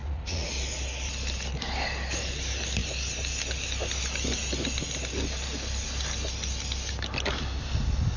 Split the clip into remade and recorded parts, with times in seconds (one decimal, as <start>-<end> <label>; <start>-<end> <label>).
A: 0.0-0.5 remade; 0.5-8.2 recorded